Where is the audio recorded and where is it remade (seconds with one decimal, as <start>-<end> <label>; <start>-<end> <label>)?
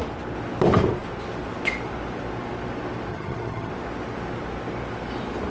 0.0-3.1 recorded; 3.1-3.7 remade; 3.7-5.5 recorded